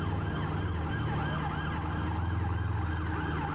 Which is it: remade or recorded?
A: recorded